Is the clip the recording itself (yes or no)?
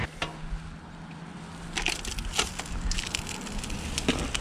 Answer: yes